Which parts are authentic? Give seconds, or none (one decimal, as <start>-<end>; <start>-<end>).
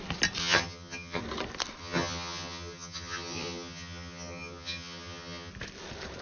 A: 0.0-0.4; 1.2-1.8; 5.5-6.2